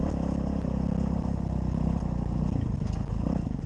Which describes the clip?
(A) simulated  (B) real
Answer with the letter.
B